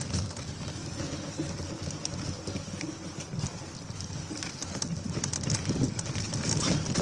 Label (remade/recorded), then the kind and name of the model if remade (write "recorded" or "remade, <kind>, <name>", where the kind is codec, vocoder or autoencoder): recorded